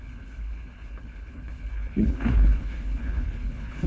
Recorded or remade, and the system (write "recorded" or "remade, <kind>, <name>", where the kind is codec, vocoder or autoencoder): remade, codec, HILCodec